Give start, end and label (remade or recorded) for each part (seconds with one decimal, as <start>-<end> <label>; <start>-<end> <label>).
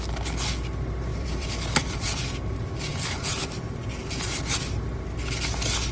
0.0-1.1 recorded; 1.1-4.6 remade; 4.6-5.9 recorded